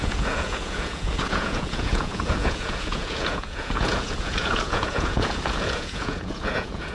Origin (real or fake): fake